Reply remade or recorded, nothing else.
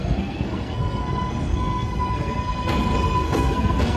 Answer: remade